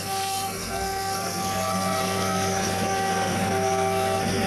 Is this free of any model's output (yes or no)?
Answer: no